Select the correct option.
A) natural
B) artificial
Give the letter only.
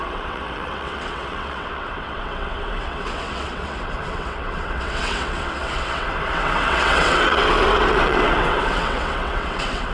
B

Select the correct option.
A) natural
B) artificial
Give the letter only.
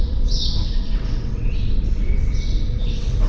B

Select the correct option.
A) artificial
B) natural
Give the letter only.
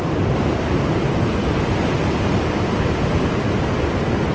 B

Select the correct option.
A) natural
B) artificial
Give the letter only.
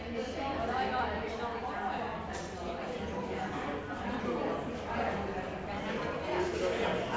A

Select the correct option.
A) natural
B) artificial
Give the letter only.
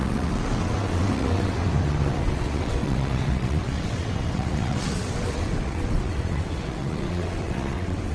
B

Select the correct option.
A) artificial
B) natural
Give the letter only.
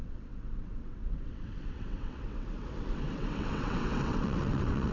A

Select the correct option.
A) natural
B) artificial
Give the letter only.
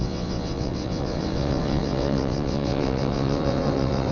B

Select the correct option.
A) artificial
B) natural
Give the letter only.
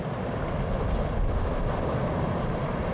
B